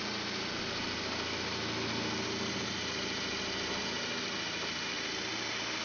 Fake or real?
real